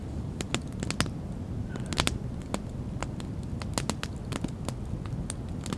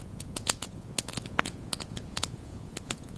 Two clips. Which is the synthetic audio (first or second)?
second